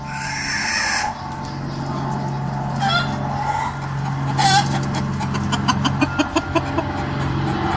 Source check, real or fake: real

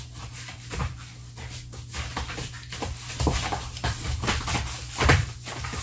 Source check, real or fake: real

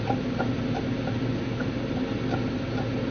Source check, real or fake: real